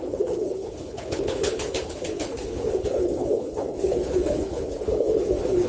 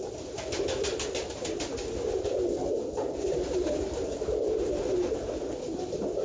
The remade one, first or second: first